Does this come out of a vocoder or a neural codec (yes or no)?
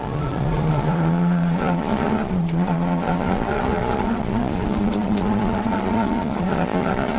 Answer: yes